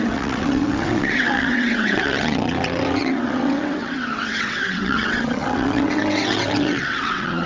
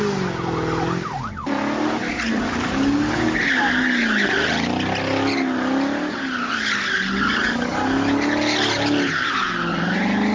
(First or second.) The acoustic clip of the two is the second